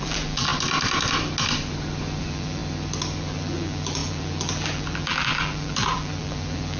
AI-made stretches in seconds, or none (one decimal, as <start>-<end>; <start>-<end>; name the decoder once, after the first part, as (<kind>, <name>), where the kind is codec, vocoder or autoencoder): 0.0-0.5 (vocoder, BigVGAN v2); 2.2-2.6; 3.2-6.8